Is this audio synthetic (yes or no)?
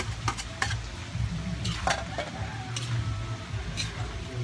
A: no